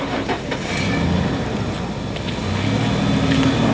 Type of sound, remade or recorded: recorded